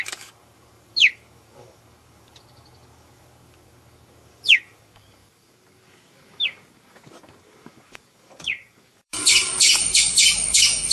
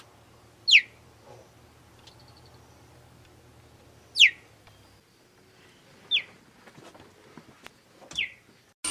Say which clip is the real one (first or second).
second